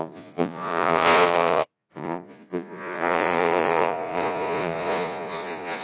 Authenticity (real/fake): fake